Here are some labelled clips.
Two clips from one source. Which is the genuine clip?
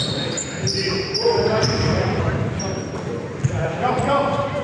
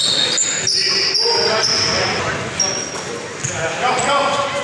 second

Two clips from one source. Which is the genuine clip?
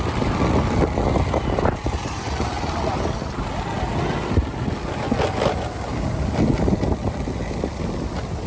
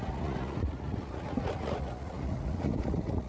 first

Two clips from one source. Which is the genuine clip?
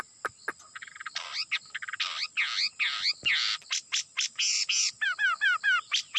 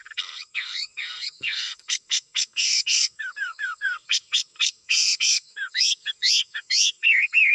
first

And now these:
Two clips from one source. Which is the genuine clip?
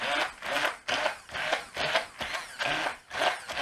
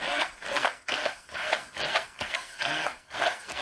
first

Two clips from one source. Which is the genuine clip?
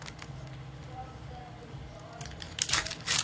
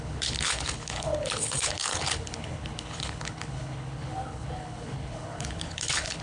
first